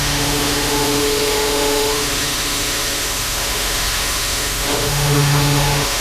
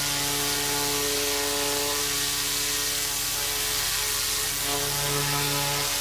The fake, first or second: first